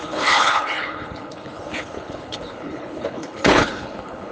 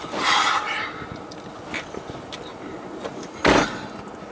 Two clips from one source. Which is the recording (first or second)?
second